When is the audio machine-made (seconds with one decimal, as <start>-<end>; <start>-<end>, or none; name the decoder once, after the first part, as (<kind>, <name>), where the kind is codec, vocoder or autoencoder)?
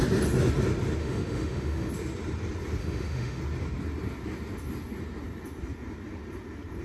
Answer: 1.0-1.9 (autoencoder, DAC-VAE); 2.8-3.4